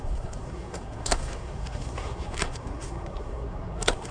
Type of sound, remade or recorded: remade